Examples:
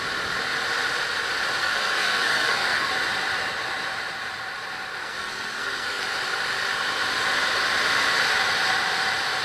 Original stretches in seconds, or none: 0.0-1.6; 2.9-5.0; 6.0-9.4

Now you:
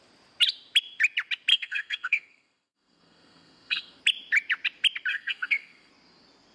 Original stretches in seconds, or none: 0.0-1.5; 4.0-5.1; 5.9-6.5

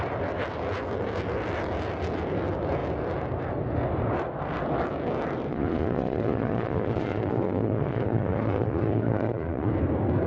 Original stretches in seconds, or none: 0.0-5.5; 9.7-10.3